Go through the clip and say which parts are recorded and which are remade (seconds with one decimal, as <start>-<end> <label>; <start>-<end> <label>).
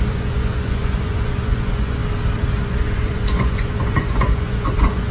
0.0-2.0 remade; 2.0-2.6 recorded; 2.6-5.1 remade